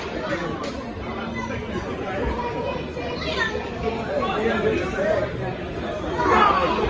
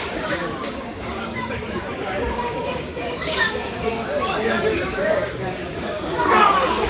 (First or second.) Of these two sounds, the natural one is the first